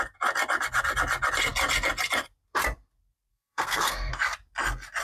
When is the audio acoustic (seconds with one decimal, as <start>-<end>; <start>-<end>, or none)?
0.0-3.3; 4.1-5.0